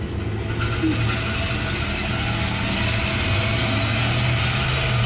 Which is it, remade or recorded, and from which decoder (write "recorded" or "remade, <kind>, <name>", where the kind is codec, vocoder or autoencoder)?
recorded